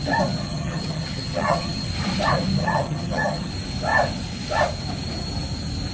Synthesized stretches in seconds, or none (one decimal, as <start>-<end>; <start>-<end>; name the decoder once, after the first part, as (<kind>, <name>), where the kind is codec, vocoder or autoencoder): 0.4-1.9 (vocoder, HiFi-GAN); 2.6-3.5